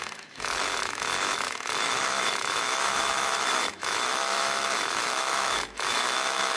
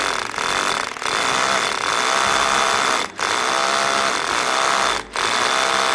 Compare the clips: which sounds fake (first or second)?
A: first